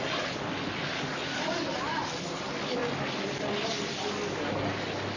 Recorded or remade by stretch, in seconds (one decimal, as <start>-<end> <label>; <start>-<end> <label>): 0.0-5.2 recorded